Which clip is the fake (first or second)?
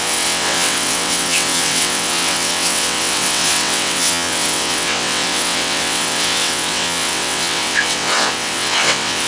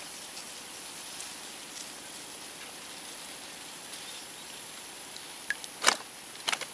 first